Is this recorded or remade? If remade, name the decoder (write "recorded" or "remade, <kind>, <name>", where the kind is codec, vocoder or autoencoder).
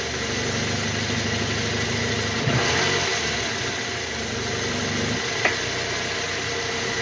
recorded